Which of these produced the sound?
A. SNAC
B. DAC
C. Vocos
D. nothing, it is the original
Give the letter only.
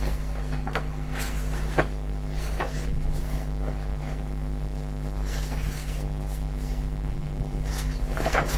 A